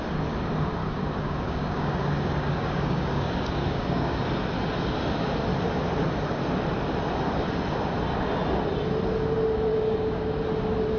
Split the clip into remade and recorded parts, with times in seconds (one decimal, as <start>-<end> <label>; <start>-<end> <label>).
0.0-0.8 recorded; 0.8-4.2 remade; 4.2-9.7 recorded; 9.7-10.4 remade; 10.4-11.0 recorded